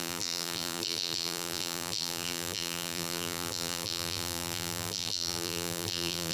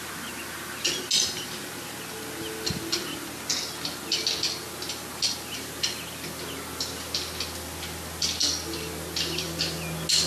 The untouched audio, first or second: second